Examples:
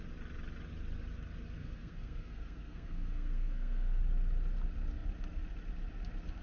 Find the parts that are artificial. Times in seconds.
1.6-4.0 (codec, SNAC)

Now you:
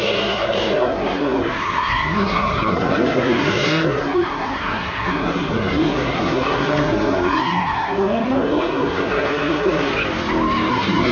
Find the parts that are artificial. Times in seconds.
0.0-9.9 (codec, SNAC); 10.7-11.1

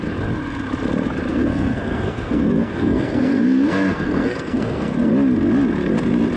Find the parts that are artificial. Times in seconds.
1.3-5.1 (codec, SNAC)

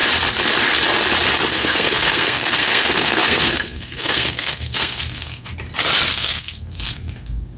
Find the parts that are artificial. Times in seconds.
1.5-5.5 (codec, SNAC); 6.1-7.6

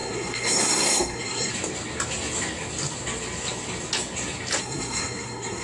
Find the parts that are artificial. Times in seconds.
0.0-1.5 (codec, SNAC); 4.6-5.6

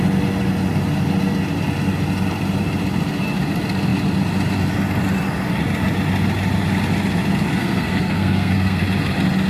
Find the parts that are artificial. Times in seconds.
7.6-8.8 (codec, SNAC)

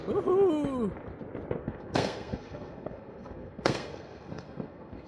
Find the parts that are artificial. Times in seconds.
1.6-5.1 (codec, SNAC)